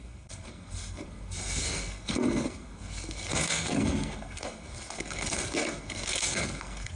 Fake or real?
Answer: fake